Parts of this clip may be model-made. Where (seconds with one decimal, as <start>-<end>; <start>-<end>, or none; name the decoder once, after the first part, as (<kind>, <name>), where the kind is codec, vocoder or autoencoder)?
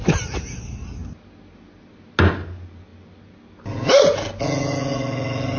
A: none